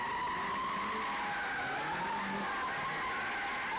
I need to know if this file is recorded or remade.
recorded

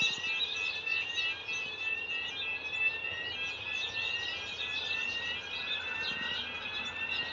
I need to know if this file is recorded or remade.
recorded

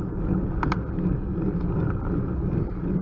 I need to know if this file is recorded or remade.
recorded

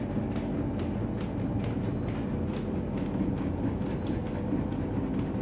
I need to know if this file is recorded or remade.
recorded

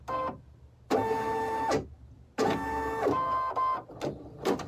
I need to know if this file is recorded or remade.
recorded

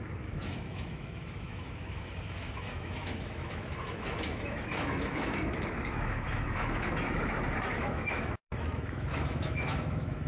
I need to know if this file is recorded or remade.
remade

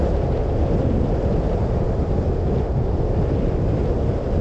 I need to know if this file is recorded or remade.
recorded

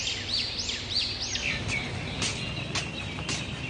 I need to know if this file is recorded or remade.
recorded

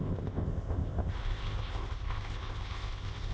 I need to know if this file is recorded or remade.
remade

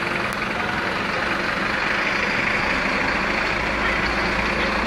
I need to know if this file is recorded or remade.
recorded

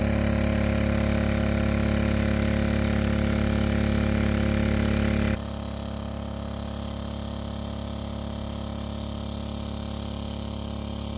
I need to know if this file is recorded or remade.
recorded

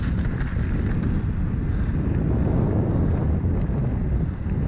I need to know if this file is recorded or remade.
recorded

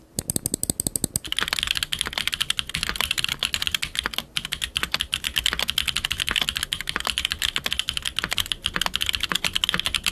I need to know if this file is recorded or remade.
recorded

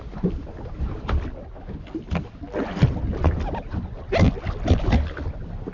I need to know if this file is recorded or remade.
recorded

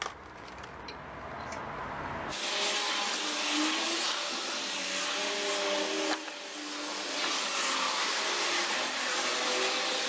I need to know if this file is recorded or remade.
recorded